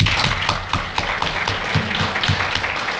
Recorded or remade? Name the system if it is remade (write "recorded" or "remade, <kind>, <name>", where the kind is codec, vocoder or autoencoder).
recorded